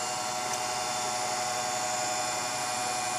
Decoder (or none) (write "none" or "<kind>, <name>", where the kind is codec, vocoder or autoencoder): none